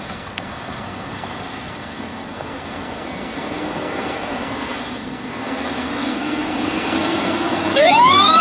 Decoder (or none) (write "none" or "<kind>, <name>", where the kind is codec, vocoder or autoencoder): codec, SNAC